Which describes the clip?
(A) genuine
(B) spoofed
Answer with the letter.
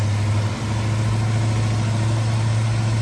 A